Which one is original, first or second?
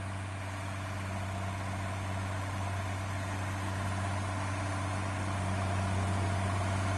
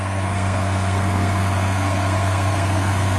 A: first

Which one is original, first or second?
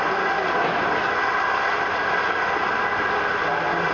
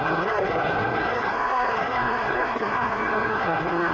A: first